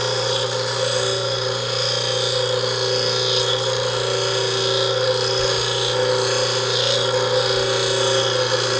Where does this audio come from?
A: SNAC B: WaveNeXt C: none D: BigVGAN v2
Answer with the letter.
C